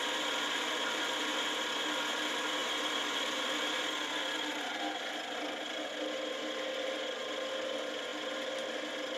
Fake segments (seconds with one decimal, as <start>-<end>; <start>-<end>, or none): none